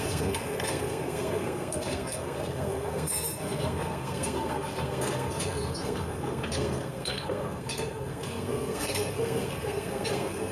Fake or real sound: fake